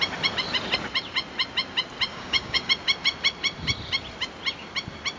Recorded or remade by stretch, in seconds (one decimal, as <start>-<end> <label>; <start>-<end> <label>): 0.0-2.1 recorded; 2.1-2.7 remade; 2.7-5.2 recorded